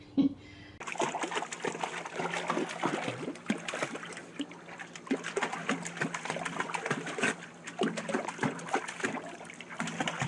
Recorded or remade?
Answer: recorded